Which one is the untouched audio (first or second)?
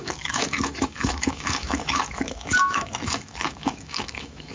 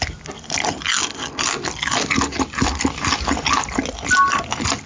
second